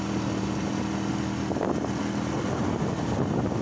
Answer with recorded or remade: recorded